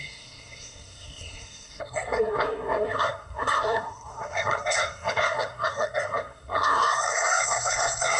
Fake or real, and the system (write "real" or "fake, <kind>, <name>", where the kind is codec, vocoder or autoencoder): fake, codec, SNAC